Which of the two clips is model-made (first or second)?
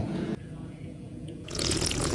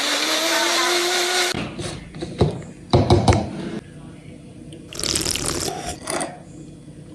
first